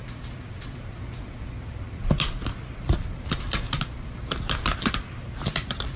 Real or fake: fake